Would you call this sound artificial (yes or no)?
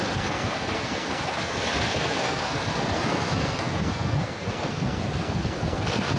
yes